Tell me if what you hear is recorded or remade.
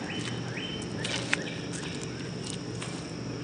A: recorded